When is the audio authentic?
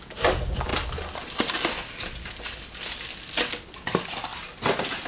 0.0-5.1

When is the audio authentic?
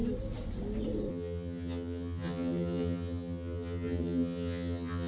0.0-1.1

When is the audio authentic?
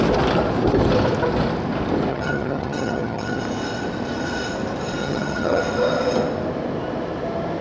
0.0-2.1; 3.4-5.0; 5.6-7.6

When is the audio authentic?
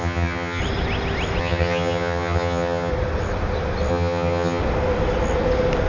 0.6-1.4; 2.9-3.9; 4.6-5.9